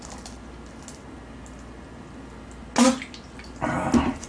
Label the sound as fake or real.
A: real